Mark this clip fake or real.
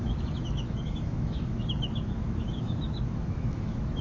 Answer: fake